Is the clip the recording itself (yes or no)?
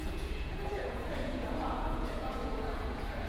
no